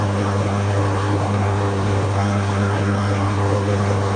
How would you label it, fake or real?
fake